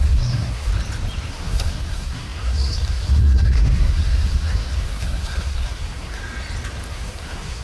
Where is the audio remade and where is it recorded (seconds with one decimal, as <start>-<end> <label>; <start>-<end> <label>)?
0.0-0.7 remade; 0.7-1.3 recorded; 1.3-6.2 remade; 6.2-6.9 recorded; 6.9-7.6 remade